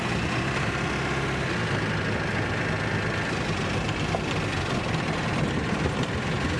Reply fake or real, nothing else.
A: real